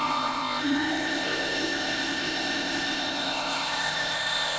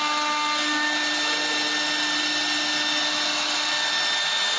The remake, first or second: first